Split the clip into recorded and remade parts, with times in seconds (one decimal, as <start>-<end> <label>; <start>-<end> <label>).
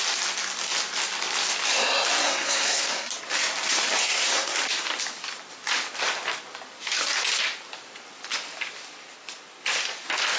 0.0-2.2 recorded; 2.2-3.1 remade; 3.1-4.0 recorded; 4.0-4.6 remade; 4.6-10.4 recorded